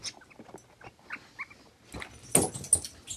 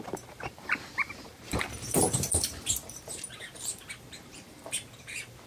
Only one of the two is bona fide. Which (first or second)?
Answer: first